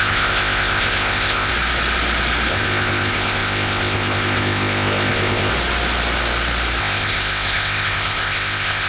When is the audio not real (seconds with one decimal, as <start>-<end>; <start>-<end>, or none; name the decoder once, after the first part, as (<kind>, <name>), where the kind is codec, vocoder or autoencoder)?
0.0-1.5 (codec, ZipCodec); 2.5-5.5; 6.8-8.9